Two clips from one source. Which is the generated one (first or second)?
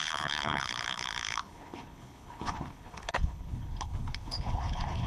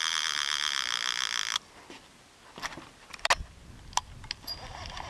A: first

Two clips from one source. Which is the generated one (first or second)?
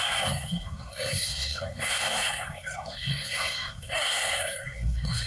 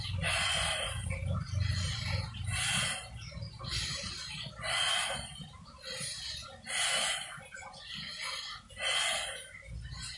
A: first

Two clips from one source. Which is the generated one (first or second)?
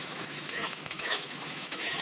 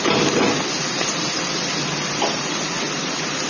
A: first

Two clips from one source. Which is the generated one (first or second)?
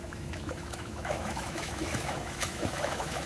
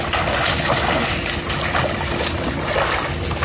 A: first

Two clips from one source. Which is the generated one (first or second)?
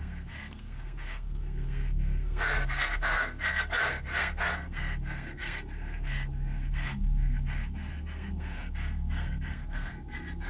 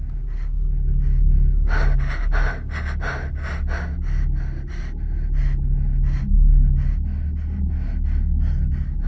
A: first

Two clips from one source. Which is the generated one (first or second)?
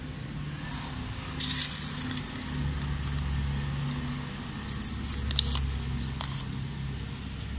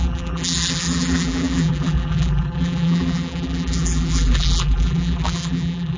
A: second